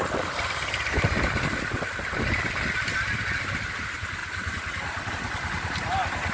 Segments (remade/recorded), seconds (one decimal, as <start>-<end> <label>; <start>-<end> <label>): 0.0-6.3 recorded